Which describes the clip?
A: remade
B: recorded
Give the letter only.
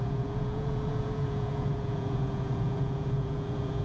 A